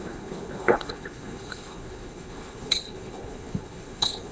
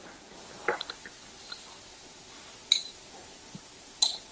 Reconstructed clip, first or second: first